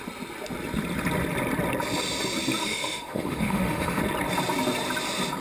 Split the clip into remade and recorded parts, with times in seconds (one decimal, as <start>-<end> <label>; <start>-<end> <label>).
0.0-2.6 recorded; 2.6-4.0 remade; 4.0-5.4 recorded